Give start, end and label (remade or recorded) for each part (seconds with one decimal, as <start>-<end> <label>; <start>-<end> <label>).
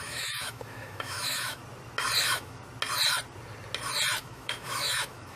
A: 0.0-1.6 remade; 1.6-2.2 recorded; 2.2-2.6 remade; 2.6-4.2 recorded; 4.2-5.4 remade